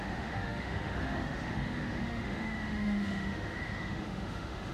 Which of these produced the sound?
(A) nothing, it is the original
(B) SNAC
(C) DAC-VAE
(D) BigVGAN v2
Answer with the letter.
C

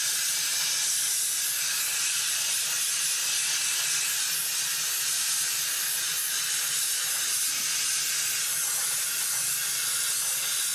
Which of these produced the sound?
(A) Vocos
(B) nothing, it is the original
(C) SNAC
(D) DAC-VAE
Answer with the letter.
B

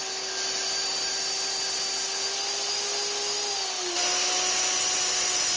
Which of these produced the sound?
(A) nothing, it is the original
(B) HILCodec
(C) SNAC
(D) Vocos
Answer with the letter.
A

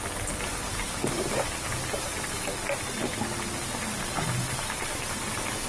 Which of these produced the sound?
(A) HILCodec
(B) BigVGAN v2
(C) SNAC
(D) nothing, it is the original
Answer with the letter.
D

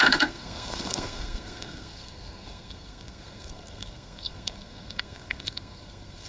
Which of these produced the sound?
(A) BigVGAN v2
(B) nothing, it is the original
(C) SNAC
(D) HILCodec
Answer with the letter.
C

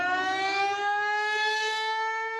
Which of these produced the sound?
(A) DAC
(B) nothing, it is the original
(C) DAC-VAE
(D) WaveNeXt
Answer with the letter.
A